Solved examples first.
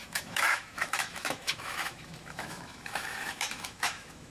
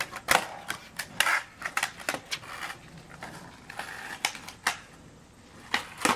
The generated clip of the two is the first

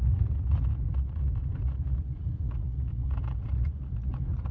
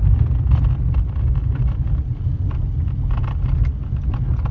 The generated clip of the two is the first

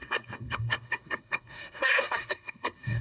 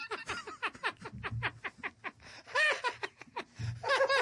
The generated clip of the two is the first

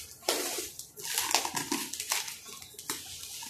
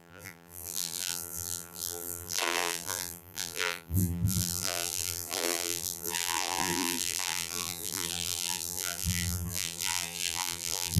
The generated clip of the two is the second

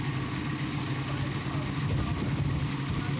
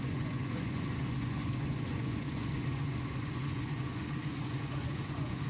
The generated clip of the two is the second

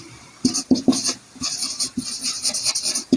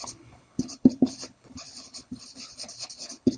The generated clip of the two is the second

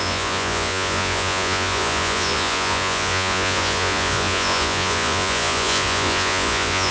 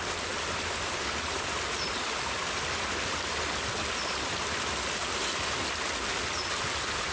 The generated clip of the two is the first